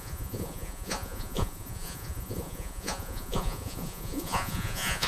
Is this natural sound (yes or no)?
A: no